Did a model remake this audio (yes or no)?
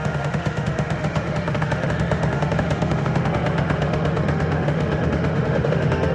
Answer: yes